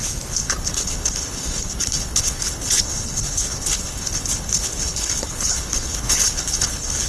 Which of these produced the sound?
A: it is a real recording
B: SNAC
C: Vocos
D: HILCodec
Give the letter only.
D